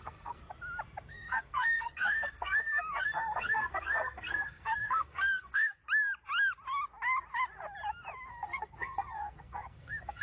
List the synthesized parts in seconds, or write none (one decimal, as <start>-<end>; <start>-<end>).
0.0-0.4; 1.1-5.8; 8.3-10.2